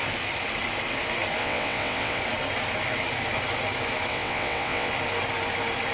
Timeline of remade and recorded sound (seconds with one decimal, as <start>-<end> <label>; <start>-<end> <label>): 0.0-1.4 recorded; 1.4-2.2 remade; 2.2-4.1 recorded; 4.1-4.9 remade; 4.9-5.9 recorded